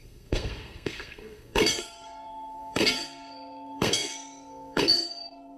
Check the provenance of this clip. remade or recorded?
remade